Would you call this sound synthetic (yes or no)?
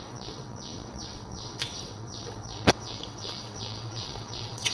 yes